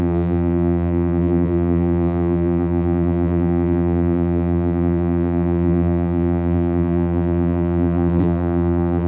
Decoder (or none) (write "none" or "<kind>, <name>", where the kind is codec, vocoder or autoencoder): vocoder, BigVGAN v2